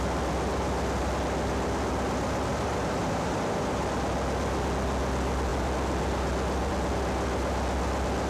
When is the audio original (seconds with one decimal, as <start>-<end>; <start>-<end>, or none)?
0.0-2.5; 3.9-8.3